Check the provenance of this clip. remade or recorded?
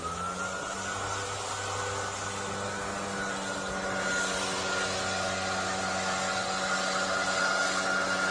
recorded